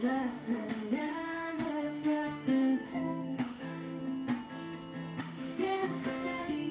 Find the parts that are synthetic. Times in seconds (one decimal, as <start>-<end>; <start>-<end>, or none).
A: 0.0-4.0; 5.2-6.7